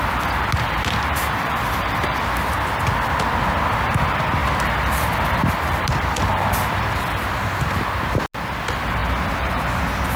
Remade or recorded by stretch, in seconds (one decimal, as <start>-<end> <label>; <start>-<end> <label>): 0.0-4.4 recorded; 4.4-7.6 remade; 7.6-10.2 recorded